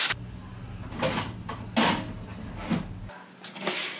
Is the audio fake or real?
real